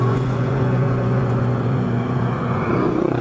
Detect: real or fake fake